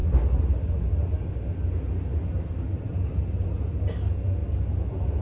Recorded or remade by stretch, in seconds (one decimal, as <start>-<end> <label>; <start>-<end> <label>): 0.0-5.2 recorded